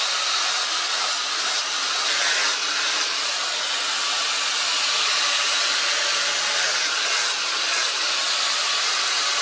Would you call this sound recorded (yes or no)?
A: yes